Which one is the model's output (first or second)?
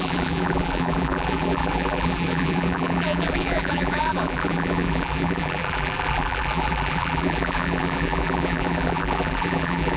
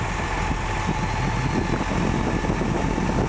first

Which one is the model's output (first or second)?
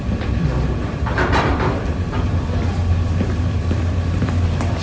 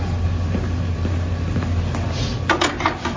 first